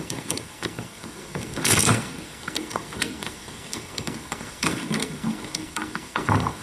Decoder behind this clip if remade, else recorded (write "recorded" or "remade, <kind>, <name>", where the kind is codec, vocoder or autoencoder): remade, codec, SNAC